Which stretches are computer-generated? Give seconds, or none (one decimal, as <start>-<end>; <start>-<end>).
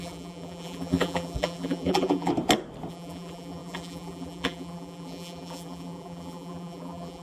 0.0-2.3; 2.9-7.2